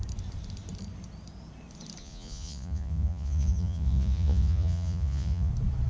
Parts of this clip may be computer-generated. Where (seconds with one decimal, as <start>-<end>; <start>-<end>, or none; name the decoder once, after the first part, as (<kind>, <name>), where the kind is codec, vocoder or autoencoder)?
2.0-5.5 (vocoder, Vocos)